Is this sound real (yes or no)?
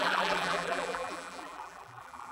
no